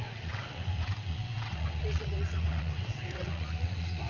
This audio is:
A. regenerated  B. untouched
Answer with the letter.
A